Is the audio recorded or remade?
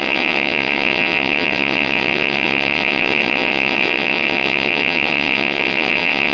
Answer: remade